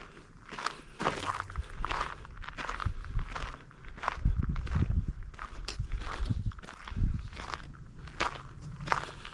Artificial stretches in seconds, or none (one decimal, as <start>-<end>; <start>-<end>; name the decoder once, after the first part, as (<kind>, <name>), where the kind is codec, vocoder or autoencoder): none